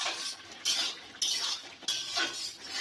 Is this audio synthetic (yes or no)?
no